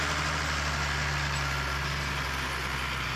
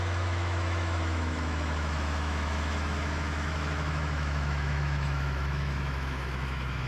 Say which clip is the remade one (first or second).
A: second